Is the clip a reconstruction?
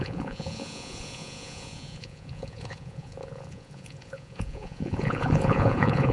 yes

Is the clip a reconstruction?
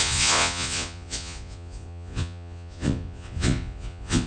yes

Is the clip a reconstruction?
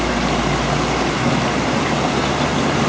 no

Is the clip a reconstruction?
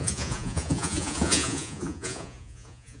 yes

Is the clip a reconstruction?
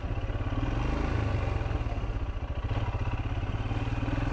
no